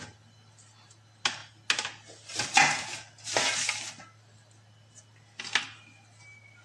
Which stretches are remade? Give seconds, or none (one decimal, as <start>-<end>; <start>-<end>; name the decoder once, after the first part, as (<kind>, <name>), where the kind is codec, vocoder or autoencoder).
none